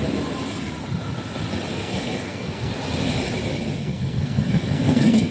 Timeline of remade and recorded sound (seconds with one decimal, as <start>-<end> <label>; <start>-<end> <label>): 0.0-1.7 recorded; 1.7-2.7 remade; 2.7-3.8 recorded; 3.8-5.3 remade